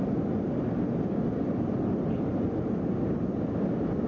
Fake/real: real